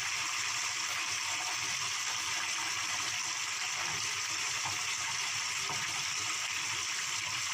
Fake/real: real